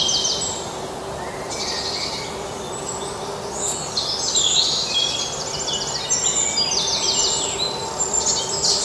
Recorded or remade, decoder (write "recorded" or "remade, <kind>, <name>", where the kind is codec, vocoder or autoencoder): recorded